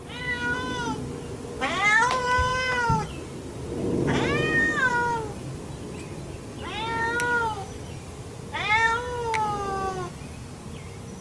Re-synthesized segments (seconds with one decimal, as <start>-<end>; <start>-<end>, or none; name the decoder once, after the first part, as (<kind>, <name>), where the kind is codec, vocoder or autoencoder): none